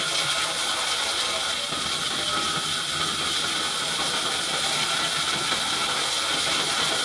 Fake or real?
real